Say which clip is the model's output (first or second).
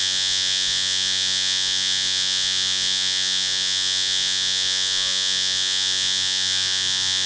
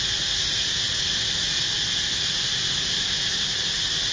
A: first